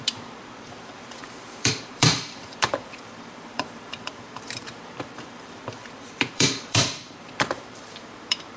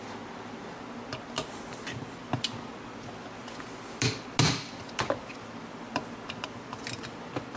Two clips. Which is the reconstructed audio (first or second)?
first